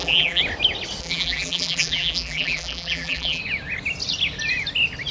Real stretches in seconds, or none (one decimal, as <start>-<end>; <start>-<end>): 0.4-1.0; 3.4-5.1